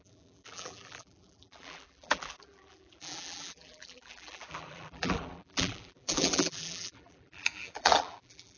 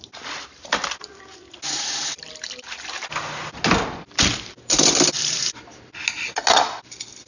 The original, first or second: second